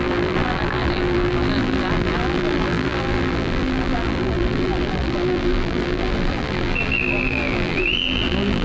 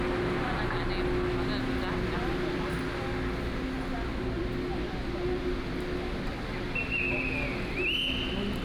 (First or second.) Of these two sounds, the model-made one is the first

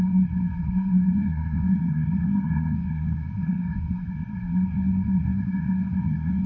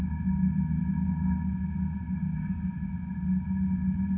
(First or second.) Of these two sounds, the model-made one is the first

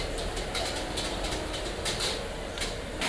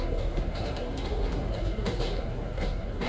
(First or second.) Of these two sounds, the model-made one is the second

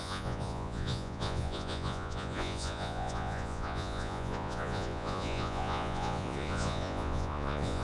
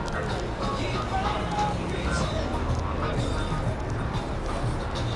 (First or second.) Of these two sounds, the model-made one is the first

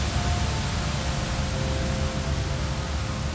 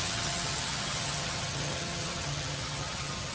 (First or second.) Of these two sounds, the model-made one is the second